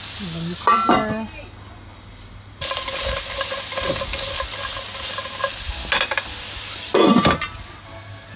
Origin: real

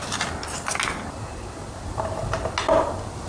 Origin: real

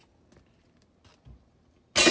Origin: real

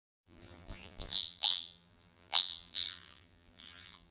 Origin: fake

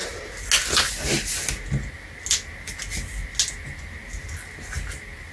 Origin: real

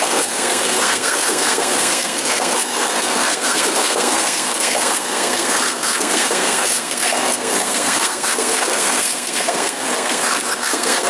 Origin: fake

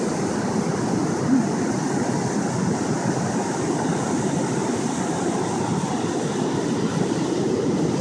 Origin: fake